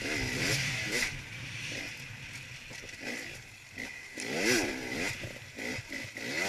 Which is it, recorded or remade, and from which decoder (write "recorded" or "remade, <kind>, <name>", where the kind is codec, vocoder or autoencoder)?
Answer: recorded